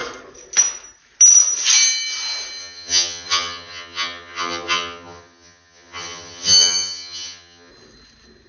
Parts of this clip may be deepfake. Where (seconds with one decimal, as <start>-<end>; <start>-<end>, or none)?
2.6-7.7